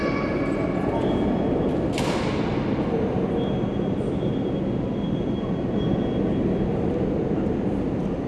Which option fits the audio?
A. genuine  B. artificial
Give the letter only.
A